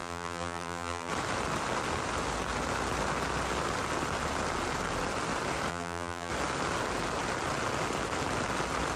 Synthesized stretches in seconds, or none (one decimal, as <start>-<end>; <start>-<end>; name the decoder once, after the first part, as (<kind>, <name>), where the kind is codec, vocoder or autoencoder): 0.0-1.1 (vocoder, BigVGAN v2); 5.7-6.3